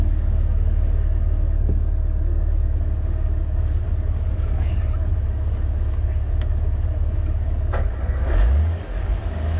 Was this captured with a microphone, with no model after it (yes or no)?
no